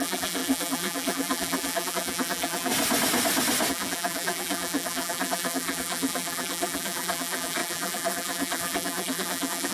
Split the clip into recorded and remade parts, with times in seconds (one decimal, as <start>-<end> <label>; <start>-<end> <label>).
0.0-2.7 remade; 2.7-3.7 recorded; 3.7-9.7 remade